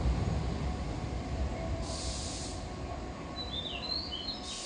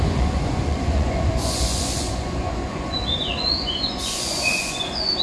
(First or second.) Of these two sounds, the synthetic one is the second